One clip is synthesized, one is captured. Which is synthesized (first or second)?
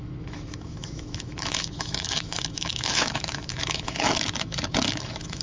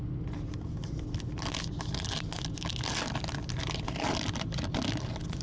first